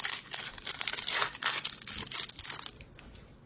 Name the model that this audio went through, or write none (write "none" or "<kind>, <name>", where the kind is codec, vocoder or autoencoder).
none